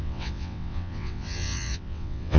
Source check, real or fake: fake